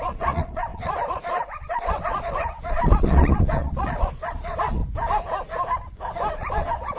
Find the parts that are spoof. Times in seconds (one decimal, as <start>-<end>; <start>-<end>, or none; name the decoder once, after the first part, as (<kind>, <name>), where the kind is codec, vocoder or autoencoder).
0.0-4.8 (vocoder, Vocos); 6.3-7.0